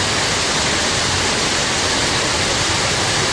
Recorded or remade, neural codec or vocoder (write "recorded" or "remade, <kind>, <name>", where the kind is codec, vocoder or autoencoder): remade, vocoder, BigVGAN v2